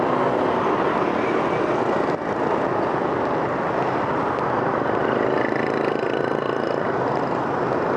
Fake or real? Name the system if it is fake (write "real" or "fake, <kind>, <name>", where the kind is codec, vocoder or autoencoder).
real